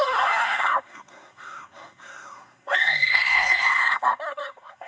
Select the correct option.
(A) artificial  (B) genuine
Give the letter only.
A